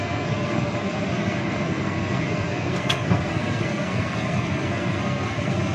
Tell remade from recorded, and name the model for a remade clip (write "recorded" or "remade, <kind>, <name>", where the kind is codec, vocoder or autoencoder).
remade, codec, SNAC